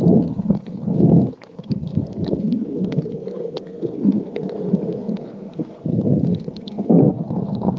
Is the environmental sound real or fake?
fake